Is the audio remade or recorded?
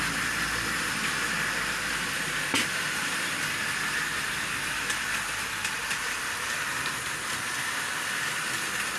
recorded